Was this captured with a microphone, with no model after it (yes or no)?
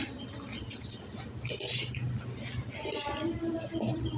yes